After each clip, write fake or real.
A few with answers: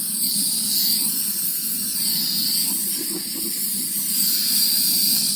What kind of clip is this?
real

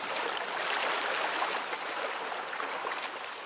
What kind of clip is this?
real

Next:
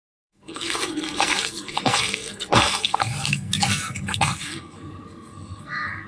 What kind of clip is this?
fake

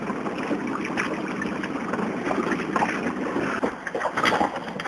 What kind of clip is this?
real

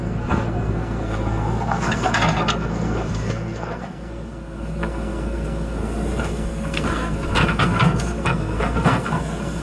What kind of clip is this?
fake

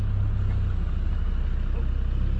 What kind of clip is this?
real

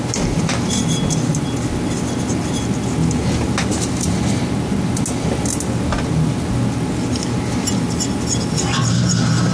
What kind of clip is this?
real